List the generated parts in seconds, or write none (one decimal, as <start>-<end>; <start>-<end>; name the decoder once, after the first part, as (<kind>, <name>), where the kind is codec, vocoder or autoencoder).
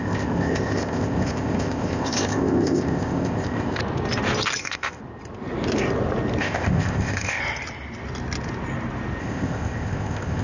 0.0-3.8 (codec, ZipCodec); 4.6-5.0; 6.4-7.4; 9.2-10.4